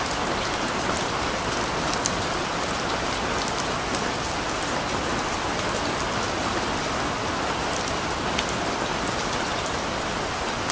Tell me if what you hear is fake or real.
real